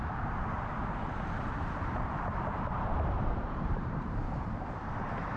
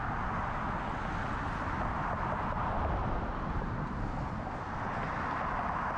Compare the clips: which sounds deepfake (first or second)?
first